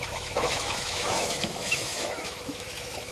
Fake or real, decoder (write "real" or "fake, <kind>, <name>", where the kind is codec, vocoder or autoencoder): fake, autoencoder, DAC-VAE